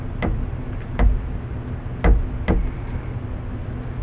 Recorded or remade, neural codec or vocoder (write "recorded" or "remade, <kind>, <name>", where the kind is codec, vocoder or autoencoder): recorded